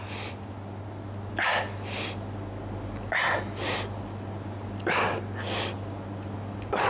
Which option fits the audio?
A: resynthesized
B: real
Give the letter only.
B